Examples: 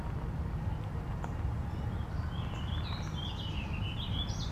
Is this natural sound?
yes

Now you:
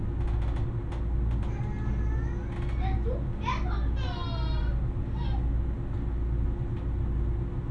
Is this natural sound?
yes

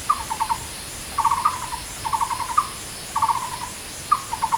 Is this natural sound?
yes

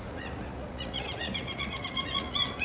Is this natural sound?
no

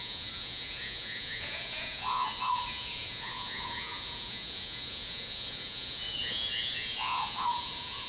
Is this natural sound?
no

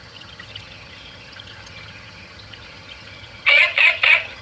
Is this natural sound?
no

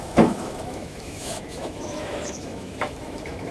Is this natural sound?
no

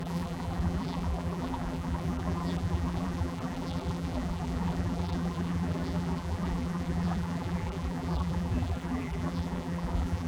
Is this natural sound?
no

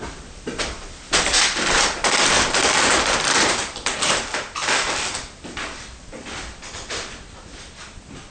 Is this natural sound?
no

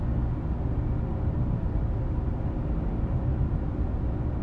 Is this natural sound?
yes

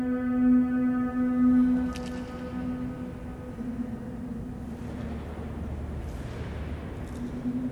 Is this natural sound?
yes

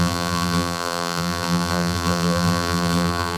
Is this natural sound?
no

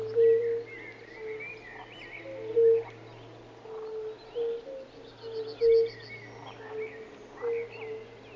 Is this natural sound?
yes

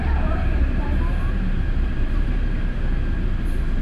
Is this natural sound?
no